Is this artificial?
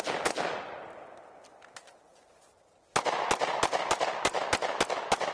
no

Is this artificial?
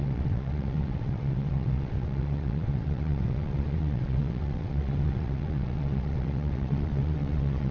yes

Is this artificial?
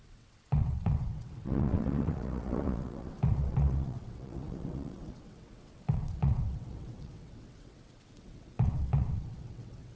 yes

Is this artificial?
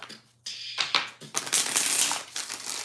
no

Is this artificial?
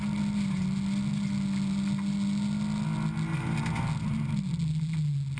no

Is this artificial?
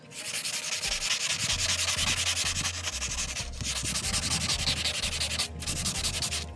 no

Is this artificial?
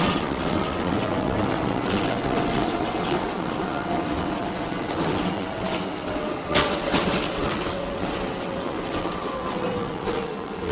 yes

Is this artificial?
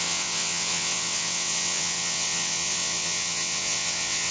yes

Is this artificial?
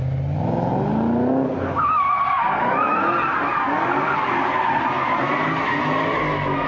no